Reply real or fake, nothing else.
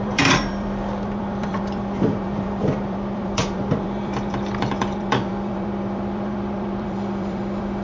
fake